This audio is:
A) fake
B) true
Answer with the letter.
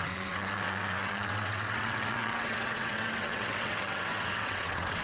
A